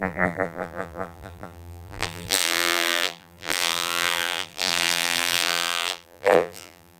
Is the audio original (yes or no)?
no